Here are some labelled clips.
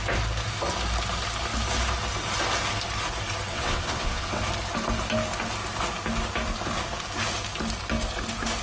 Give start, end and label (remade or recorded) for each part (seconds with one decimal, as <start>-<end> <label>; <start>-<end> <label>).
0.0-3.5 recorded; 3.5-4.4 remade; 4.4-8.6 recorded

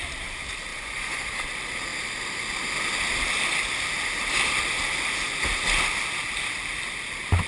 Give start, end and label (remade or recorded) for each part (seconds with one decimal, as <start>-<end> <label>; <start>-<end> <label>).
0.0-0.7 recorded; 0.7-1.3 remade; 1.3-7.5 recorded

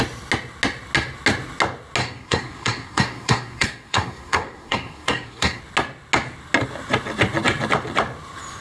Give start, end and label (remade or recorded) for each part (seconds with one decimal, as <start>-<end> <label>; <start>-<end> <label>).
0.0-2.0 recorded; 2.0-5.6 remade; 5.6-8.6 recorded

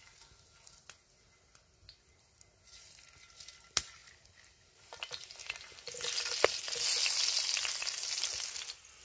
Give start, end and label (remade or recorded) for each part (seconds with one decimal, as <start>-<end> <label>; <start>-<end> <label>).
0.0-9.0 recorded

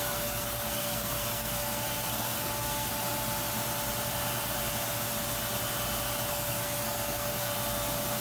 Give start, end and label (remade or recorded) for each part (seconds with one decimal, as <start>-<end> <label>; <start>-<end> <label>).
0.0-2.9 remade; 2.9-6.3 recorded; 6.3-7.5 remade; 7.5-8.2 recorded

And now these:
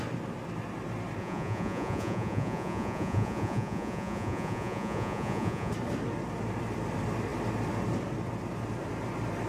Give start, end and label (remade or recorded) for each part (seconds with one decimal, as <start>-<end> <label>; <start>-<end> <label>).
0.0-1.2 recorded; 1.2-5.7 remade; 5.7-9.5 recorded